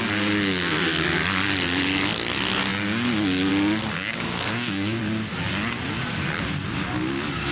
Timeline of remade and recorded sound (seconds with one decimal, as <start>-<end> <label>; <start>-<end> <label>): 0.0-4.0 recorded; 4.0-5.0 remade; 5.0-7.5 recorded